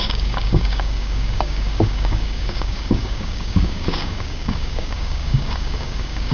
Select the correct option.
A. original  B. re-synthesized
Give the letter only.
B